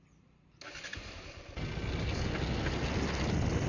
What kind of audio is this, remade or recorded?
recorded